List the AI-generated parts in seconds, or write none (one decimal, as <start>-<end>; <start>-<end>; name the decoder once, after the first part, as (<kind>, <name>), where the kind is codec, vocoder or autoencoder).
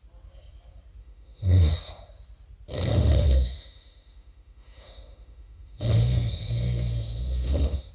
1.0-1.7 (autoencoder, DAC-VAE); 2.9-7.9